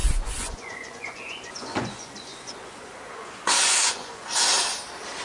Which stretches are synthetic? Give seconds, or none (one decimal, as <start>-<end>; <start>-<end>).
0.0-4.5